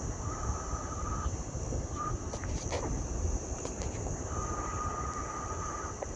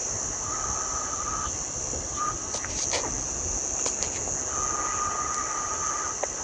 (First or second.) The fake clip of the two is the first